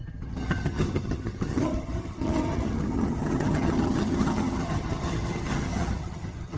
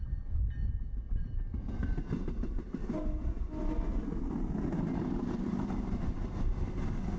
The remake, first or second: first